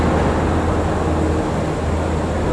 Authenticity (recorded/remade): recorded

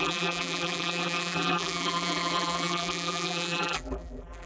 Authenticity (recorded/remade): remade